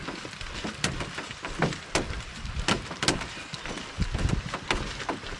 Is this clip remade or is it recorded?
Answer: recorded